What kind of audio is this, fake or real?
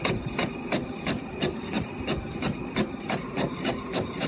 real